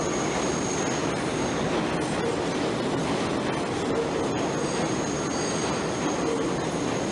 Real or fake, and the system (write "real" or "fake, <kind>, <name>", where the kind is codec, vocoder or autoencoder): real